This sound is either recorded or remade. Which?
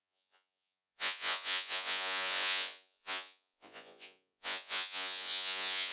remade